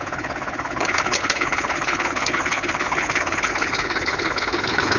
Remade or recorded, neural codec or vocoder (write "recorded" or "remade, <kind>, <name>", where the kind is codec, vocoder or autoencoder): remade, codec, HILCodec